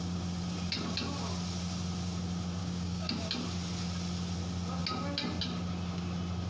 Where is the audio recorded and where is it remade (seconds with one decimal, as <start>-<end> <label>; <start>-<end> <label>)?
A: 0.0-2.6 recorded; 2.6-3.1 remade; 3.1-6.5 recorded